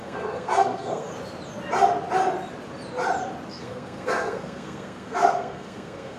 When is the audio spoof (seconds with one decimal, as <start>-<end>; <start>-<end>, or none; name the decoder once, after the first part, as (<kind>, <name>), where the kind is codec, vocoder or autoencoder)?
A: 0.0-1.1 (codec, SNAC); 3.5-6.2